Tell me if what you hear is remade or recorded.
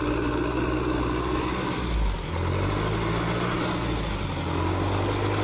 recorded